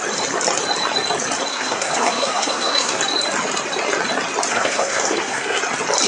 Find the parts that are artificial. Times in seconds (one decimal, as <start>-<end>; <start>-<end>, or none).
1.5-3.0; 4.5-5.6